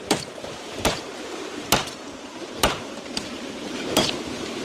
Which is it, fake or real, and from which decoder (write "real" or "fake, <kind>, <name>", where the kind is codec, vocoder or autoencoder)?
fake, vocoder, BigVGAN v2